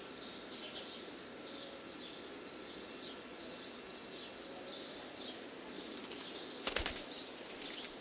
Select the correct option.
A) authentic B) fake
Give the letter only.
A